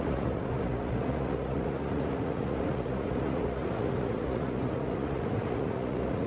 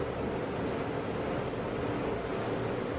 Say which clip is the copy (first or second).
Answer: first